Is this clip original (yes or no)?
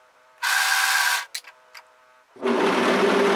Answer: yes